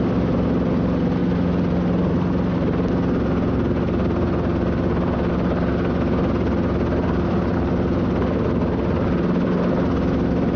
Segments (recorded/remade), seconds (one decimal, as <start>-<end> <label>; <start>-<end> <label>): 0.0-10.6 recorded